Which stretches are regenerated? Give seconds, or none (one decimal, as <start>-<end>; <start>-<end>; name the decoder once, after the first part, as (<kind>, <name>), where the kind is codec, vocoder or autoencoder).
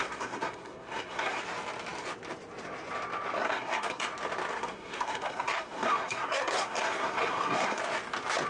0.0-1.4 (codec, SNAC); 3.4-4.1; 4.5-7.8